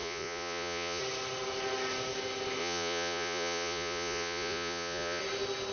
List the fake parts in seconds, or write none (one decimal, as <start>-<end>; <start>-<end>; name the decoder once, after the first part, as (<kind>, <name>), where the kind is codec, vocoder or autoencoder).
0.0-1.0 (vocoder, Vocos); 2.6-5.2

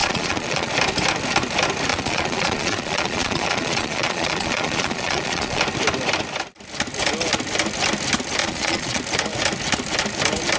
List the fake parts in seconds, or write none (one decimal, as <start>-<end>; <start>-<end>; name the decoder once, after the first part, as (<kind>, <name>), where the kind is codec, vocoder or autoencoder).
0.0-0.7 (vocoder, Vocos); 1.9-5.6; 8.4-9.0

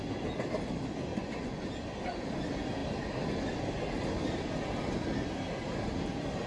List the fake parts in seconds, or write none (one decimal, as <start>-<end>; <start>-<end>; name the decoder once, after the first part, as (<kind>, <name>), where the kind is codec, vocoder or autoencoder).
1.1-1.7 (vocoder, Vocos)

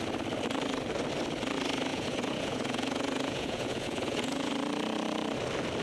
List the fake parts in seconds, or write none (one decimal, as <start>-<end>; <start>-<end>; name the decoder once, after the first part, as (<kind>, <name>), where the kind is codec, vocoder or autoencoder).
1.9-4.5 (vocoder, Vocos)